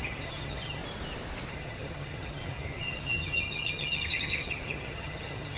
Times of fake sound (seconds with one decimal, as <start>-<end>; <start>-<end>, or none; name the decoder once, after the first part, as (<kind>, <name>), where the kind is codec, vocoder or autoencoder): 0.0-0.8 (vocoder, HiFi-GAN); 1.5-5.6